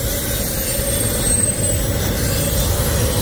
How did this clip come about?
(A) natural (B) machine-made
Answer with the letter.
A